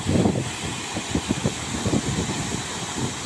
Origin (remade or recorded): recorded